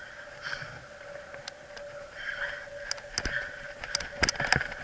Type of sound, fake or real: real